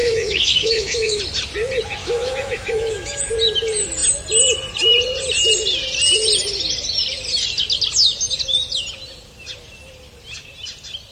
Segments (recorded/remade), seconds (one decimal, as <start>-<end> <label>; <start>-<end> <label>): 0.0-1.2 remade; 1.2-2.0 recorded; 2.0-3.3 remade; 3.3-11.1 recorded